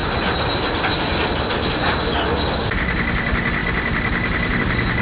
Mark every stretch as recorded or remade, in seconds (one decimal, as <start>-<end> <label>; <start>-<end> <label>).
0.0-5.0 recorded